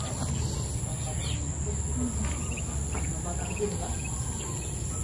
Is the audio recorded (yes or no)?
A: yes